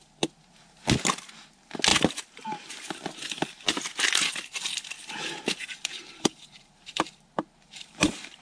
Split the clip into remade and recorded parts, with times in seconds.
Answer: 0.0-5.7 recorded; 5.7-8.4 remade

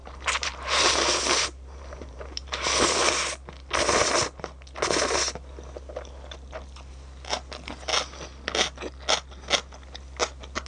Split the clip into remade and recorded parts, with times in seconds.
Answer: 0.0-3.1 remade; 3.1-10.7 recorded

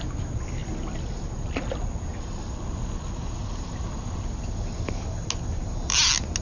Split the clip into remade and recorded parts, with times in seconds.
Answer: 0.0-6.4 recorded

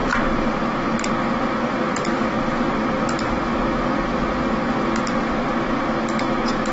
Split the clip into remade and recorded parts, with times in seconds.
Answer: 0.0-1.0 remade; 1.0-6.7 recorded

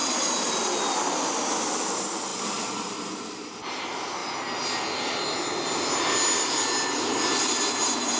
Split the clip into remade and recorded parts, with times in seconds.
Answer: 0.0-8.2 recorded